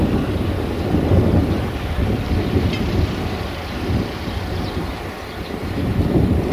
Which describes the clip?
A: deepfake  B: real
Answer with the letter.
A